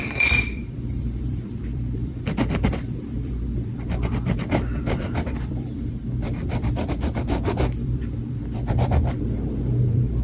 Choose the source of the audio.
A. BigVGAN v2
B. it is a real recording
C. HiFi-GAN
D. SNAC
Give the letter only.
A